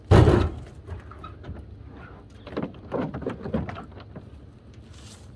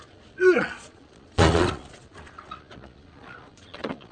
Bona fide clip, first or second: first